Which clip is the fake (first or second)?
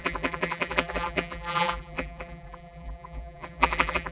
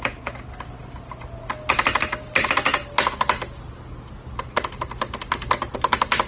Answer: first